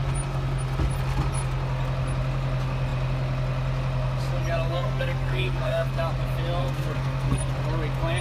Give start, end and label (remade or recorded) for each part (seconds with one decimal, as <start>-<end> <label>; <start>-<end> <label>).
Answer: 0.0-4.7 recorded; 4.7-6.0 remade; 6.0-6.6 recorded; 6.6-7.5 remade; 7.5-8.2 recorded